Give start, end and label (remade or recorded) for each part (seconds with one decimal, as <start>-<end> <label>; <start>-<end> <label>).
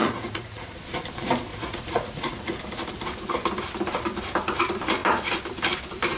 0.0-0.8 remade; 0.8-1.5 recorded; 1.5-2.6 remade; 2.6-6.2 recorded